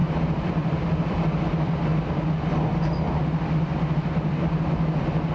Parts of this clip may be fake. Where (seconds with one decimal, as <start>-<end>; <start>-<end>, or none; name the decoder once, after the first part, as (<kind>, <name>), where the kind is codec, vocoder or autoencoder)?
0.0-1.9 (vocoder, BigVGAN v2)